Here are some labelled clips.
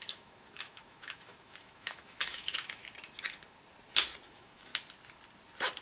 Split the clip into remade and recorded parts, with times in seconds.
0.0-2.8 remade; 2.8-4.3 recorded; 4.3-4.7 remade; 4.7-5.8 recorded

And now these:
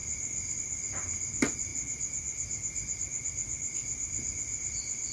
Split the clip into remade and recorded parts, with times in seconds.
0.0-5.1 recorded

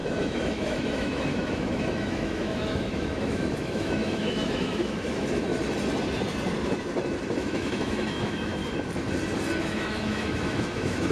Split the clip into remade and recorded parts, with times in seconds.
0.0-5.5 remade; 5.5-7.4 recorded; 7.4-8.6 remade; 8.6-9.6 recorded; 9.6-11.1 remade